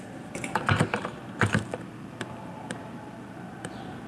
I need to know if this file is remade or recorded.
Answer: remade